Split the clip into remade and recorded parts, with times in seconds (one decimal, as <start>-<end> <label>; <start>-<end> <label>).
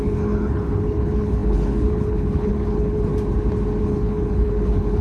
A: 0.0-3.1 remade; 3.1-3.8 recorded; 3.8-5.0 remade